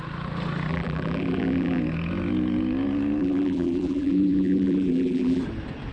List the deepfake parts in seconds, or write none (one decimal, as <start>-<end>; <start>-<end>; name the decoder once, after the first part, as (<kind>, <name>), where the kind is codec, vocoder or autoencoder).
0.7-1.8 (vocoder, BigVGAN v2); 3.2-5.4